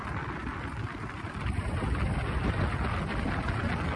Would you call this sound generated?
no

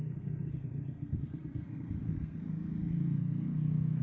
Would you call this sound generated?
yes